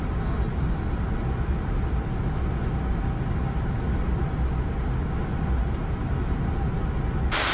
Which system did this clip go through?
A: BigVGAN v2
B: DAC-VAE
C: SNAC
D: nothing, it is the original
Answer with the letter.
D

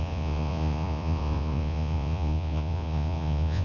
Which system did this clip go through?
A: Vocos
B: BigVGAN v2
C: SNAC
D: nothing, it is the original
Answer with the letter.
A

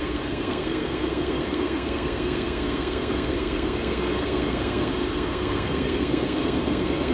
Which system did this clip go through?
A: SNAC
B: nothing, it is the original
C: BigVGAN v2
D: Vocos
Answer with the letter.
A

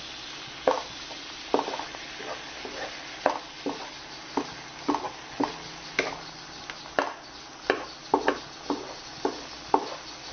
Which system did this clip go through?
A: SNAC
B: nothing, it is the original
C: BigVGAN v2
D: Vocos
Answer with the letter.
B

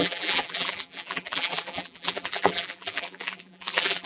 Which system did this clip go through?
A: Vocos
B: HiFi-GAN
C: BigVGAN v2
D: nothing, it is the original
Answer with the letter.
C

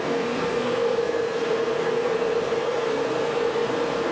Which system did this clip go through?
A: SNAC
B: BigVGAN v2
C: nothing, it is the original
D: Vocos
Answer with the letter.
A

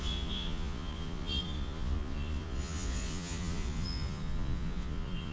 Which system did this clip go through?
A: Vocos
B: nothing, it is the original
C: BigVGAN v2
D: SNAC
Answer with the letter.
A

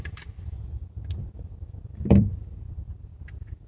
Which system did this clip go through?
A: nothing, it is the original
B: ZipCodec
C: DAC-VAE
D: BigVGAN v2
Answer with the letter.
D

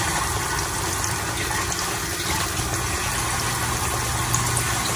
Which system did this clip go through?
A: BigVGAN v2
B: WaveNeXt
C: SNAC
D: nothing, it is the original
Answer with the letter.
D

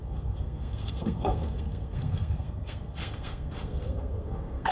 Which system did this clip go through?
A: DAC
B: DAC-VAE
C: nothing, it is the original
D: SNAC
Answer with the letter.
D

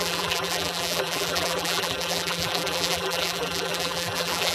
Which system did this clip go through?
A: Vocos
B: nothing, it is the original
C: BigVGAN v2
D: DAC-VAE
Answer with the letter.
C